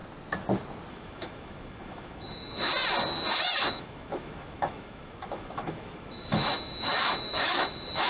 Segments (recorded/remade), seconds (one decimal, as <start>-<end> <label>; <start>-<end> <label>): 0.0-0.9 recorded; 0.9-2.7 remade; 2.7-3.7 recorded; 3.7-8.1 remade